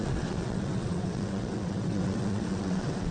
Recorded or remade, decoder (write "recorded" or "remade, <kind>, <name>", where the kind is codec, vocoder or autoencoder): remade, vocoder, WaveNeXt